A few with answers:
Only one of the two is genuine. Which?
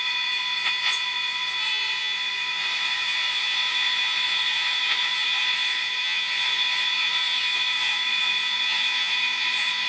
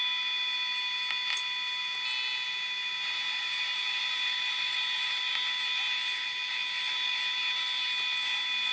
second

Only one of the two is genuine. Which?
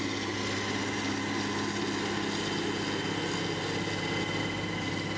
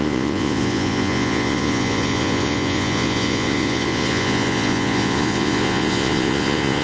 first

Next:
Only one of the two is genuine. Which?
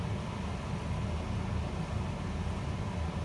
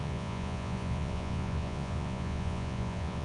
first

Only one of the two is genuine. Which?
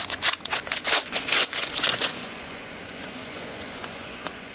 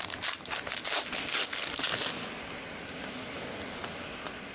second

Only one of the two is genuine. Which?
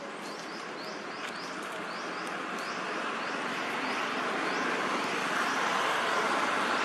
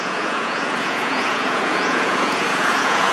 first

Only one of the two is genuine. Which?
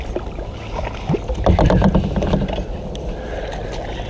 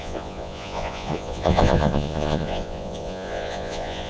first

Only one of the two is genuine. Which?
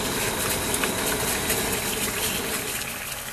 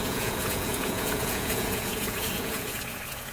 first